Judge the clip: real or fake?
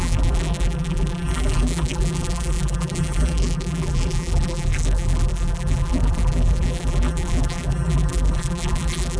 fake